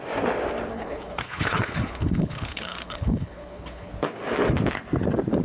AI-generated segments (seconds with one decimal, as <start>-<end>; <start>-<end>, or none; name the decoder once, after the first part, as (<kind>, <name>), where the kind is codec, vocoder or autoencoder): 0.7-3.9 (codec, HILCodec)